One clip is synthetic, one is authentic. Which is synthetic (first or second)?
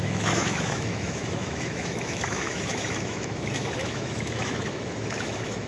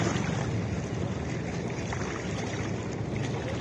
first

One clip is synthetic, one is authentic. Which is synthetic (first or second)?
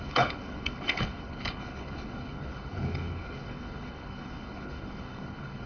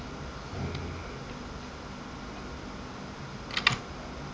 first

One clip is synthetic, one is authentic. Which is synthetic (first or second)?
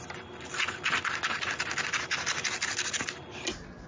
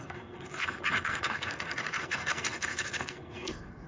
second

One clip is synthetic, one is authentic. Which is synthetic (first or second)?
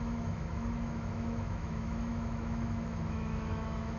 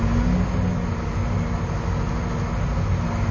first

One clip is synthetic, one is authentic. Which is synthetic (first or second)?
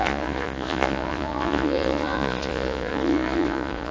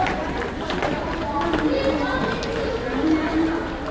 first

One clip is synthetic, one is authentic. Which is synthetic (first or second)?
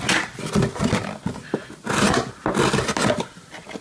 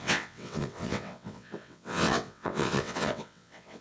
second